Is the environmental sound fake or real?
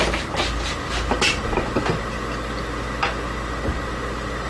real